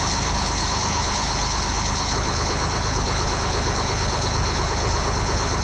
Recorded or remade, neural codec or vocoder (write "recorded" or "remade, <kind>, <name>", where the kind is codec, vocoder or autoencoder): remade, codec, HILCodec